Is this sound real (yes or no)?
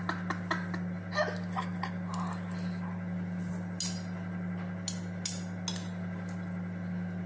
yes